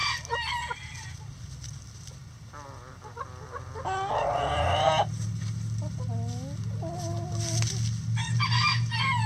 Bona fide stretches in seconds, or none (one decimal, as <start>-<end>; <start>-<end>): 0.0-9.3